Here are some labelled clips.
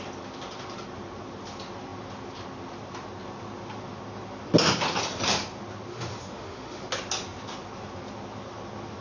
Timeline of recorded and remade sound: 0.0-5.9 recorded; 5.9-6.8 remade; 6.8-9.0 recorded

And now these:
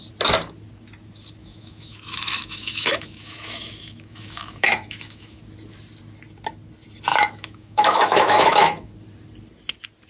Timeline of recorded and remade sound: 0.0-1.4 recorded; 1.4-5.4 remade; 5.4-7.1 recorded; 7.1-8.9 remade; 8.9-10.1 recorded

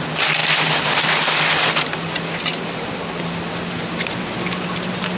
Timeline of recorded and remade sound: 0.0-5.2 recorded

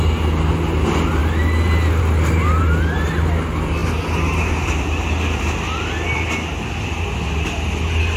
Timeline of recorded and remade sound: 0.0-8.2 recorded